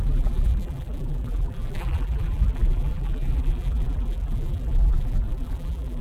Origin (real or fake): fake